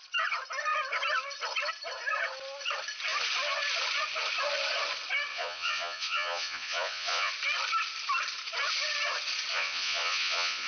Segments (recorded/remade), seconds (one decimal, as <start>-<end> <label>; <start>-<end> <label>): 0.0-5.3 recorded; 5.3-7.3 remade; 7.3-9.5 recorded; 9.5-10.7 remade